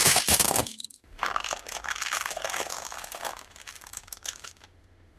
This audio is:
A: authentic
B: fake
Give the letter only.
B